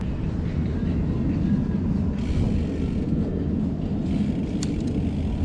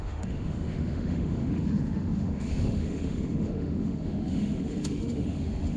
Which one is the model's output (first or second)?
second